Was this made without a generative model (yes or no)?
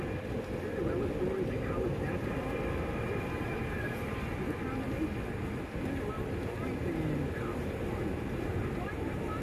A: yes